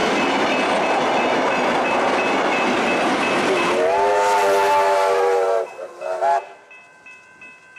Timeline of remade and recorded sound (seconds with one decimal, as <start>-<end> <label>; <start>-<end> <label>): 0.0-7.8 recorded